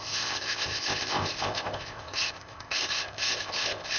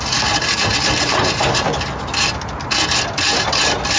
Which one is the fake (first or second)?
first